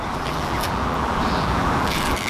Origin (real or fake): fake